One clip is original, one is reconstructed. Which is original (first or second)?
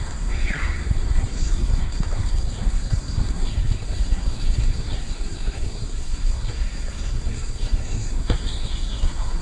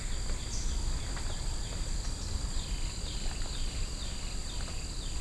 second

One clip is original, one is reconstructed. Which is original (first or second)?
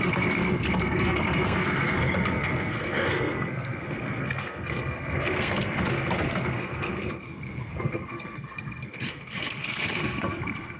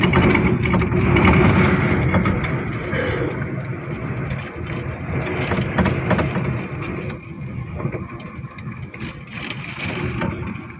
second